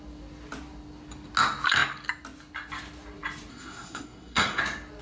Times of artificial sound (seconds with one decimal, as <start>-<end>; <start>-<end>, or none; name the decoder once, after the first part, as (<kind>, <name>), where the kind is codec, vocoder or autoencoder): 3.5-4.6 (codec, SNAC)